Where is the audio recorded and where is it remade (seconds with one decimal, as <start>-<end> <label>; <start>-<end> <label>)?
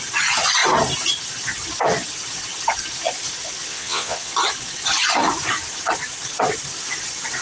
0.0-3.7 recorded; 3.7-4.3 remade; 4.3-7.4 recorded